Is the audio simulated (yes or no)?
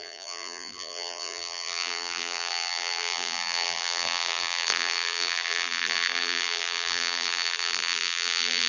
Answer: yes